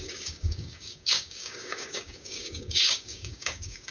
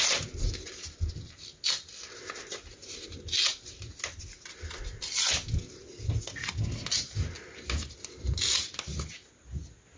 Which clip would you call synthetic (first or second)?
first